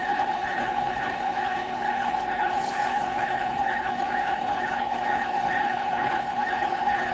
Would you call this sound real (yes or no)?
no